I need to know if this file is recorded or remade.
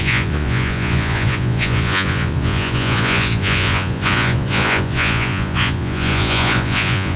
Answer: remade